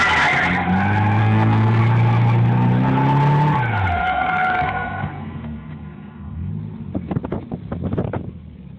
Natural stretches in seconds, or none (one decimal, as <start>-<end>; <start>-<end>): 0.0-1.2; 1.8-4.0; 6.5-8.8